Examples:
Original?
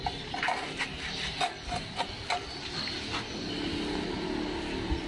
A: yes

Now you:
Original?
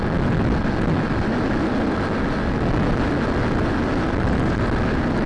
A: yes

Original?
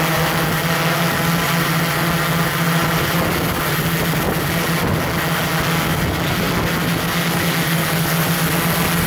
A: yes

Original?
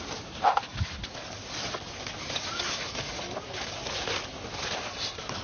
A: yes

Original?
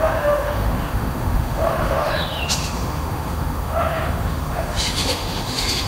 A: no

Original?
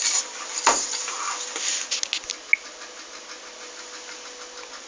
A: yes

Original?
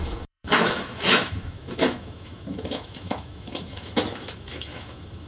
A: no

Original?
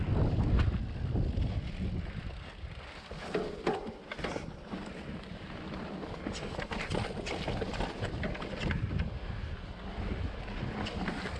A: yes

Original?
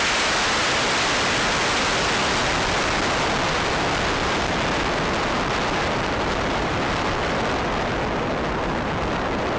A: yes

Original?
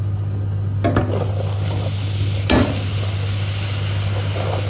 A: yes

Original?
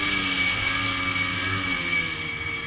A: yes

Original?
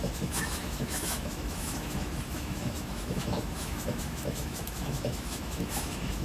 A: no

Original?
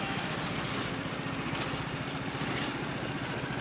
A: yes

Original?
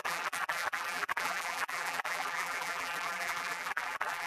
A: no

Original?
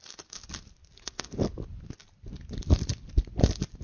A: yes